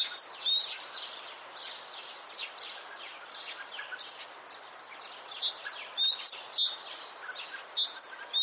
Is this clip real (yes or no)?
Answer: yes